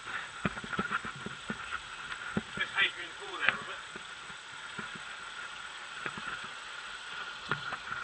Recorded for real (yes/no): no